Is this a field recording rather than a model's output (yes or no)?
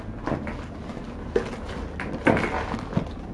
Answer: yes